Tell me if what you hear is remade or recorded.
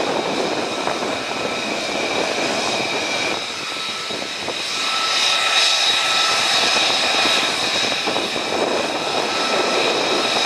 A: recorded